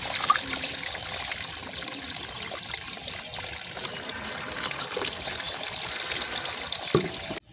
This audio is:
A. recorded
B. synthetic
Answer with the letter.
A